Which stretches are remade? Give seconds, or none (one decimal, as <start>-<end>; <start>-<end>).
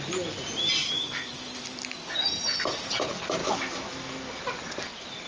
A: 0.8-1.5; 3.4-4.4